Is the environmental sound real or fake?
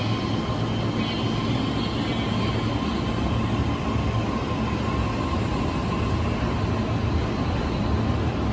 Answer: real